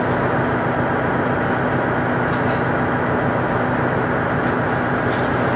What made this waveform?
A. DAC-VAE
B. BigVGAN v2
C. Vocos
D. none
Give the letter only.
D